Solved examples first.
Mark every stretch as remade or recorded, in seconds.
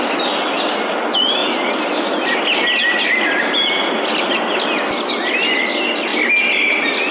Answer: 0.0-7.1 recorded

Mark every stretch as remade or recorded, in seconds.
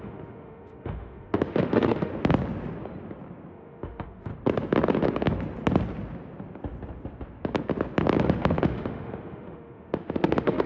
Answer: 0.0-2.1 remade; 2.1-3.5 recorded; 3.5-4.3 remade; 4.3-8.2 recorded; 8.2-10.7 remade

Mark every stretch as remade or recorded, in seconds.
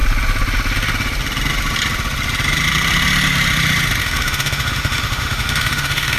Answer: 0.0-4.0 recorded; 4.0-6.2 remade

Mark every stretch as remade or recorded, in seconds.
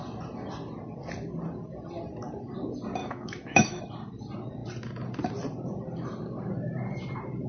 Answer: 0.0-3.0 recorded; 3.0-3.8 remade; 3.8-7.5 recorded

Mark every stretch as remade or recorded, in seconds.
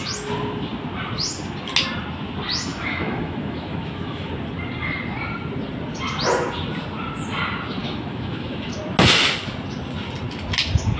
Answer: 0.0-2.7 recorded; 2.7-4.3 remade; 4.3-7.8 recorded; 7.8-8.8 remade; 8.8-11.0 recorded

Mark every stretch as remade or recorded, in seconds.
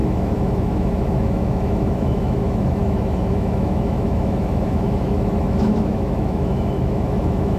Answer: 0.0-7.6 remade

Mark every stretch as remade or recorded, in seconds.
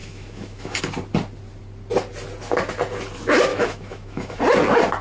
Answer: 0.0-0.8 remade; 0.8-3.5 recorded; 3.5-4.4 remade; 4.4-5.0 recorded